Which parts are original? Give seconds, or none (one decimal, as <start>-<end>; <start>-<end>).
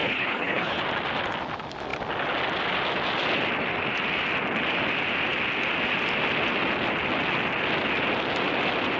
0.8-9.0